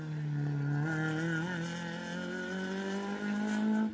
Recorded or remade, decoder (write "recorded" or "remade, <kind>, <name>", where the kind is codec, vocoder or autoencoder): recorded